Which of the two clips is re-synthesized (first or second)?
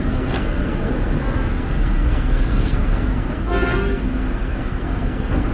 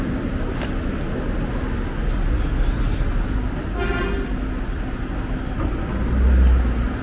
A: first